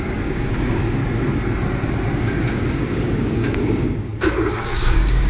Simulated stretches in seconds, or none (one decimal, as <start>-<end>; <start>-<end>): 0.0-1.0; 2.2-5.3